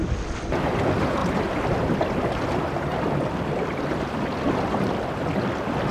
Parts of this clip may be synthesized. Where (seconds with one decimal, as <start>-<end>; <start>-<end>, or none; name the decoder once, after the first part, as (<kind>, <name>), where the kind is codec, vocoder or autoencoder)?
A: 2.9-4.2 (vocoder, BigVGAN v2)